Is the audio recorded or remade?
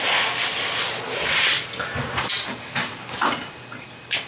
recorded